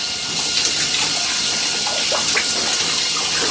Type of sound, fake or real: real